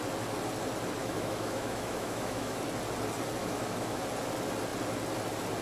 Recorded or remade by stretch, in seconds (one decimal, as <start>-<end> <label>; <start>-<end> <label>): 0.0-1.0 recorded; 1.0-2.6 remade; 2.6-3.4 recorded; 3.4-4.0 remade; 4.0-5.6 recorded